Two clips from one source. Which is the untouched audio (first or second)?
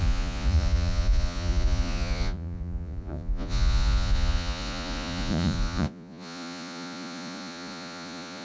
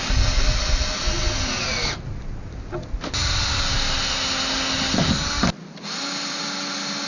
second